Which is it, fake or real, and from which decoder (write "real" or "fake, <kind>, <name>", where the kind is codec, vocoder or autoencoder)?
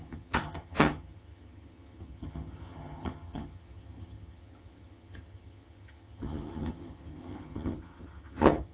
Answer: fake, vocoder, HiFi-GAN